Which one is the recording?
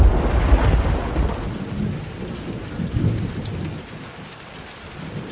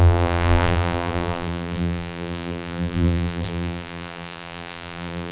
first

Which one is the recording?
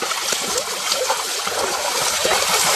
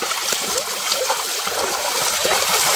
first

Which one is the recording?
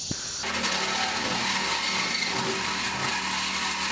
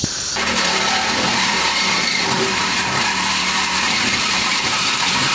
first